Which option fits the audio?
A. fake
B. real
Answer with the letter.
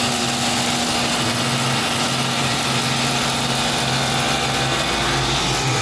B